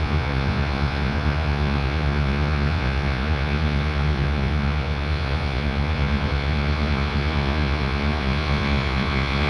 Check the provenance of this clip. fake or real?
fake